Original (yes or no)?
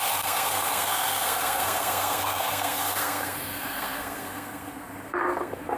no